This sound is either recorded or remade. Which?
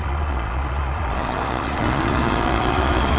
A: remade